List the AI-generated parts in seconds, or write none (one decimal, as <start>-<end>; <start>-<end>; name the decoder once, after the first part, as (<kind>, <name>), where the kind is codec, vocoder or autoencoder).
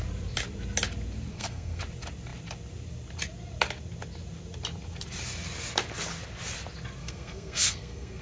1.3-1.8 (codec, SNAC); 7.0-8.2